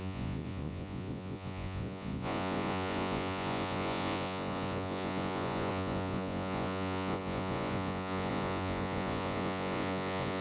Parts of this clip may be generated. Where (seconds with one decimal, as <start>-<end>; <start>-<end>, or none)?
0.0-10.4